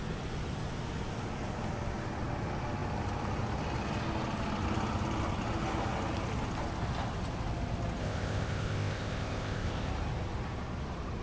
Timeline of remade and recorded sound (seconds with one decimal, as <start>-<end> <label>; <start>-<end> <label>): 0.0-8.0 recorded; 8.0-9.9 remade; 9.9-11.2 recorded